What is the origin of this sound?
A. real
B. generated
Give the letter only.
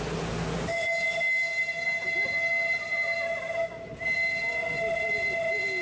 A